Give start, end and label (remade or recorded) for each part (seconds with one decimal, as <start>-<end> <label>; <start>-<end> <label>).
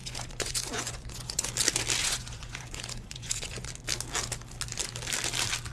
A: 0.0-1.5 remade; 1.5-2.0 recorded; 2.0-3.7 remade; 3.7-5.7 recorded